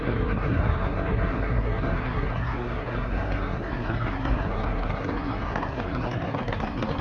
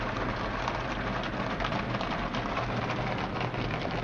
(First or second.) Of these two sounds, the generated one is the first